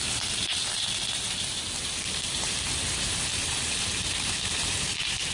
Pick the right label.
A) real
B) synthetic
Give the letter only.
B